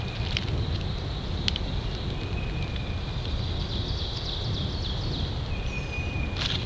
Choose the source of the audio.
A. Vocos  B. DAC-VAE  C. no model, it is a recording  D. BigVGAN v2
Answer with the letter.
C